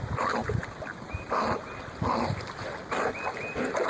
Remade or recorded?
recorded